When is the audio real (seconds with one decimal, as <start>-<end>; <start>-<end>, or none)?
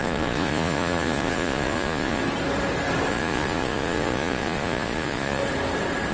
2.2-3.1; 5.4-6.1